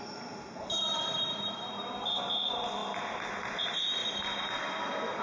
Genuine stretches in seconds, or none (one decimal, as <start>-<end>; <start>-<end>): 0.0-5.2